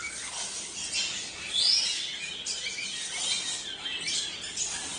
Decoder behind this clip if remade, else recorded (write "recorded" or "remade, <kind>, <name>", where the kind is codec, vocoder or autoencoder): recorded